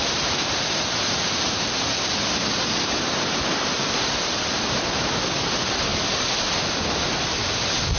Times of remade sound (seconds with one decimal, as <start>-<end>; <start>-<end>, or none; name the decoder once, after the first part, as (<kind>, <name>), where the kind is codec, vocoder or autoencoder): 0.0-4.8 (vocoder, BigVGAN v2)